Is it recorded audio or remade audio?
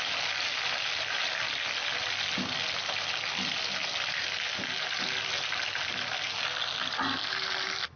recorded